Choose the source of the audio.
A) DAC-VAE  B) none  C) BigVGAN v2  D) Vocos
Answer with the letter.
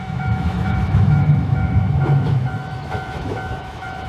A